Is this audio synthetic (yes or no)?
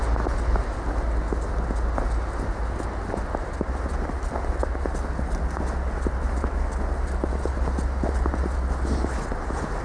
no